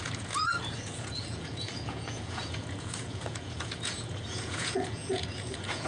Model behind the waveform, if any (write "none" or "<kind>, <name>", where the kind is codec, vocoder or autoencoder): vocoder, Vocos